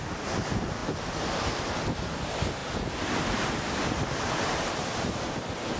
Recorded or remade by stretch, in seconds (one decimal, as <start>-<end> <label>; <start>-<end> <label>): 0.0-5.8 recorded